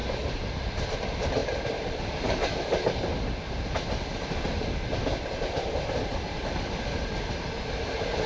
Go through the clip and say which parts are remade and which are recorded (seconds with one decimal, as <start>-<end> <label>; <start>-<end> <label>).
0.0-0.9 remade; 0.9-1.4 recorded; 1.4-2.0 remade; 2.0-6.1 recorded; 6.1-7.0 remade; 7.0-8.3 recorded